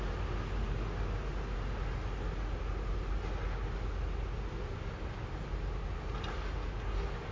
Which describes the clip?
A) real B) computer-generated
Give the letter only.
A